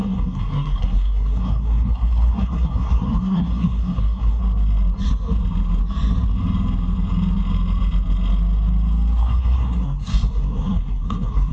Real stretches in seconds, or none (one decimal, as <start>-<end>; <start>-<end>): 4.4-9.2